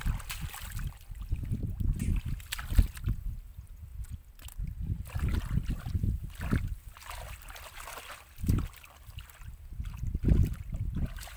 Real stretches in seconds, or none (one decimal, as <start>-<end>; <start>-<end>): 0.0-11.4